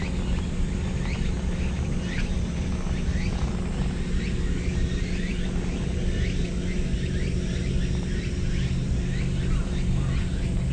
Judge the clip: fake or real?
real